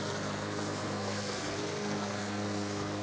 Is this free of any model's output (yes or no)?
no